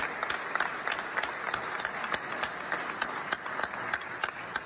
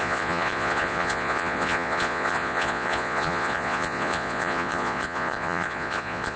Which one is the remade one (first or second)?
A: second